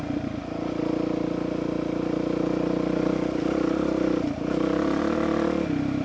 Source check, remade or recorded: recorded